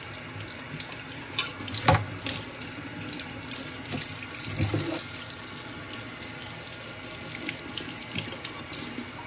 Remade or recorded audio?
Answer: recorded